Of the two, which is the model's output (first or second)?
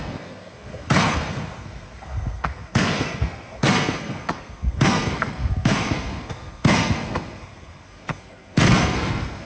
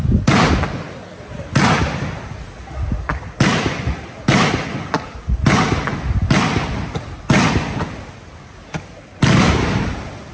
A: first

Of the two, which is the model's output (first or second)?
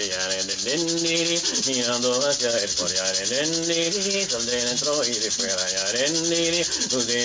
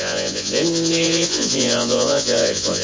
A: second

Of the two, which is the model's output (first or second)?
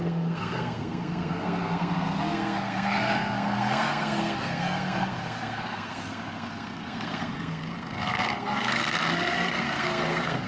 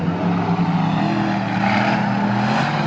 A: first